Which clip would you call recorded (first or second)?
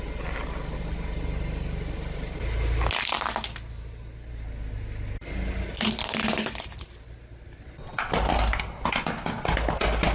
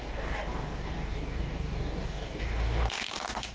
first